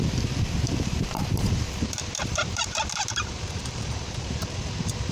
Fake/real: fake